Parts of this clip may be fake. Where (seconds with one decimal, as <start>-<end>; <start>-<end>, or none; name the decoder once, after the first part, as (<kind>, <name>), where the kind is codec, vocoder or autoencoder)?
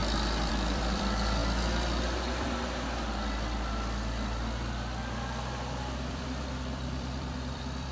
0.5-1.4 (vocoder, BigVGAN v2); 6.1-7.9